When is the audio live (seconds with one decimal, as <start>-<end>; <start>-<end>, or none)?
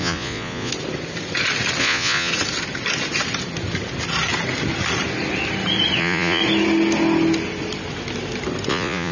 0.7-1.8; 2.3-6.0; 6.4-8.7